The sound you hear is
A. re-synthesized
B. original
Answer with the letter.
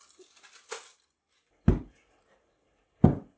B